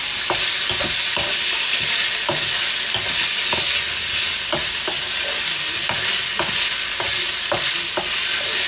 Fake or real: real